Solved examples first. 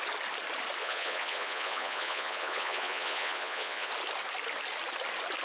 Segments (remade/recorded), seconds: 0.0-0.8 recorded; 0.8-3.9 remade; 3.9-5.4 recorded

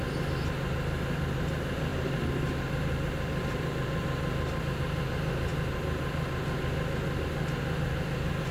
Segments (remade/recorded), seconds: 0.0-8.5 recorded